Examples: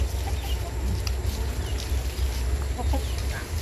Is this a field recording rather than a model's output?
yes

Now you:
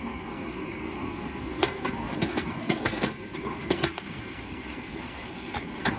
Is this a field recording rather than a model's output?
no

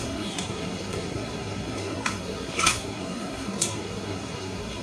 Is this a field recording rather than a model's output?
no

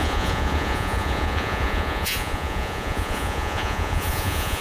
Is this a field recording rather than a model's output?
no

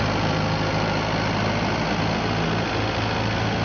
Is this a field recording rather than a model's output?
yes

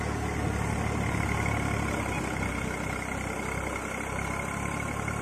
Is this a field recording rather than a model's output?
yes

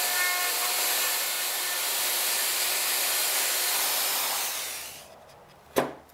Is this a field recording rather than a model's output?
yes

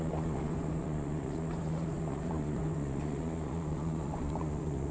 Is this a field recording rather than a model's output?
no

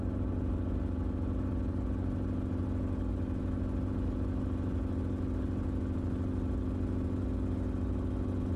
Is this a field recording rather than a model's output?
yes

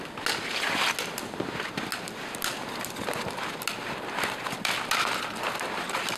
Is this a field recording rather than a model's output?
yes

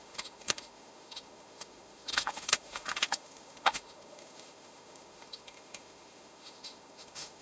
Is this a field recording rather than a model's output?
no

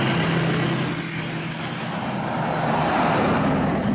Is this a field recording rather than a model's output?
yes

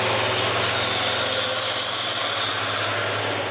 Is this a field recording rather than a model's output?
yes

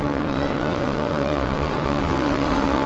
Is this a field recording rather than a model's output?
no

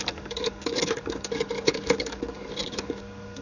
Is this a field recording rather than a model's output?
no